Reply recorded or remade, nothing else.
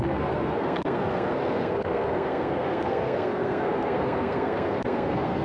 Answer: remade